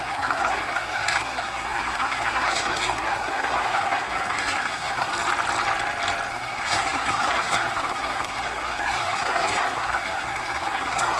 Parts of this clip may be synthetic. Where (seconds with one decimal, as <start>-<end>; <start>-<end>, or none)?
0.0-5.1; 6.3-11.2